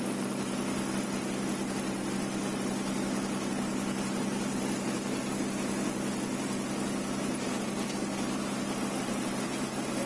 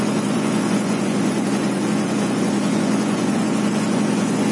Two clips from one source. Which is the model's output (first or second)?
second